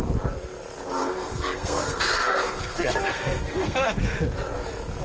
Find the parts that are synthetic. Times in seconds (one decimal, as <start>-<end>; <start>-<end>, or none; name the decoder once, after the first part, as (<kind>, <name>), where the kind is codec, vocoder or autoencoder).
1.0-4.0 (codec, SNAC)